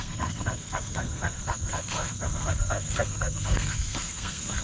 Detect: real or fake fake